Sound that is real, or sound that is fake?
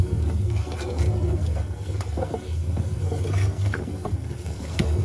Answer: fake